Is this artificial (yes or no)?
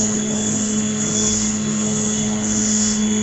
yes